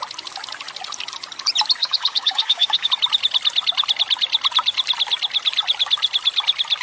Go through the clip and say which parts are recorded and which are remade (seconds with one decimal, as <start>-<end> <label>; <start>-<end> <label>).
0.0-1.8 recorded; 1.8-2.9 remade; 2.9-6.8 recorded